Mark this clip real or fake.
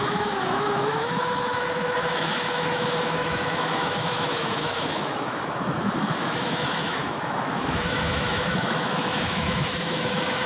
fake